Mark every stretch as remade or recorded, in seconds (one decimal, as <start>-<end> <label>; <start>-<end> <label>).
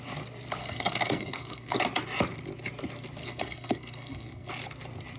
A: 0.0-0.6 recorded; 0.6-1.8 remade; 1.8-3.2 recorded; 3.2-4.5 remade; 4.5-5.2 recorded